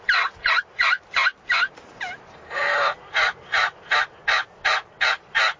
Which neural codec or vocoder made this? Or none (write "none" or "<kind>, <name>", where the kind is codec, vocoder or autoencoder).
none